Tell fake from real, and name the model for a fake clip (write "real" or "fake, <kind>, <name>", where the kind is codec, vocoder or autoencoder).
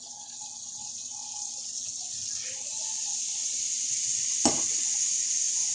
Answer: real